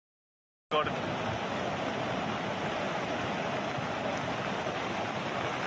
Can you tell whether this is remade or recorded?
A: recorded